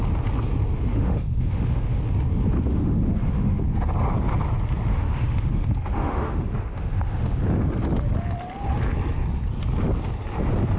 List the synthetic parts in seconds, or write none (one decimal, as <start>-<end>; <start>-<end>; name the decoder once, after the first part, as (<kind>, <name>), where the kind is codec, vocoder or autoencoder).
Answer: 0.9-2.0 (autoencoder, DAC-VAE); 2.7-3.6; 4.9-7.4

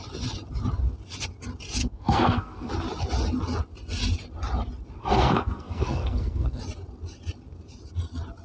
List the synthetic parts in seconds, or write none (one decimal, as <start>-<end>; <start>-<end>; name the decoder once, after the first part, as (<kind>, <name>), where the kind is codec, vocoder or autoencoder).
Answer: 1.8-2.7 (codec, SNAC); 5.0-6.6